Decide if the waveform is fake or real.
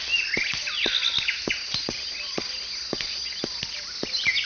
real